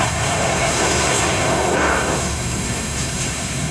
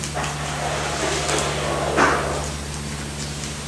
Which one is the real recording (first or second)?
second